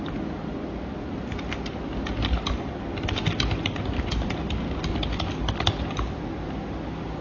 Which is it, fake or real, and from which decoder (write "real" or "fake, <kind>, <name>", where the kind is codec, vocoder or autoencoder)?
real